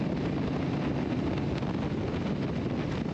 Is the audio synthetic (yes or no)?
no